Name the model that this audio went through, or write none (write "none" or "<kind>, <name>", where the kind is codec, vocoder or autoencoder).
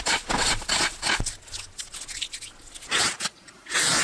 none